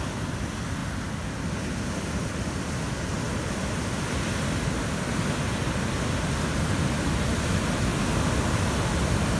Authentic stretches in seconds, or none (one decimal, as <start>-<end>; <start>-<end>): 0.0-9.4